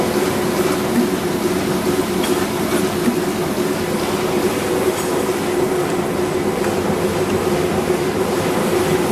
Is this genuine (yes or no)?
yes